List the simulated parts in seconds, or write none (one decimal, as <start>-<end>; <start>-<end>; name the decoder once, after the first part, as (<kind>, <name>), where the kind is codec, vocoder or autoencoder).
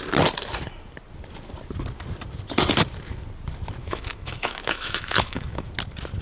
3.8-5.7 (autoencoder, DAC-VAE)